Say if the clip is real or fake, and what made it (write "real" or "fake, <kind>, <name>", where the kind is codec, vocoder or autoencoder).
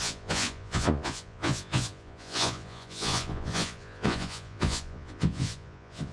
fake, vocoder, Vocos